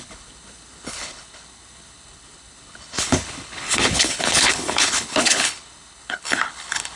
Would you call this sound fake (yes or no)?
yes